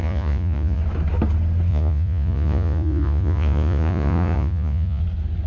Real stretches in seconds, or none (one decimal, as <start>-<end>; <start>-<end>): 0.8-1.7; 5.0-5.5